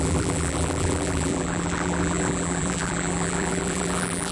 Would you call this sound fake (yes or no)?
yes